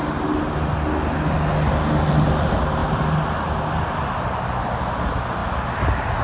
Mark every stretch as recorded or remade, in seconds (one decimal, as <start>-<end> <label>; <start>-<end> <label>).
0.0-6.2 recorded